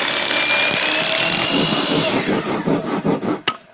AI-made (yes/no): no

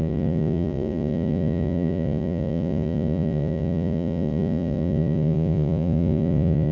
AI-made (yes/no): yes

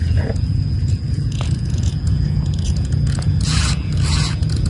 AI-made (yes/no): yes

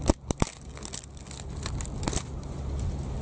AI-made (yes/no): no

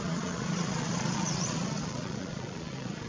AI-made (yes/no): yes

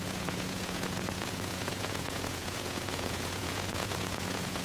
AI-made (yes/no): yes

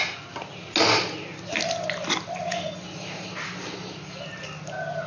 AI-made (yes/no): no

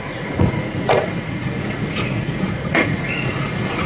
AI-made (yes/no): yes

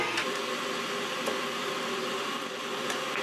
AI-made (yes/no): no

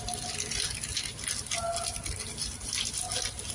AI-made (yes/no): no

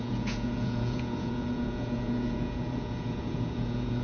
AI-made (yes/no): yes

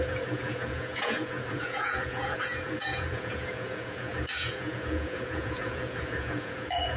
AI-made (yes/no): yes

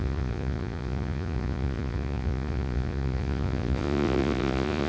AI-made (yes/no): yes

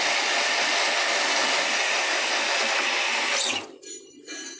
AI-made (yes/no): no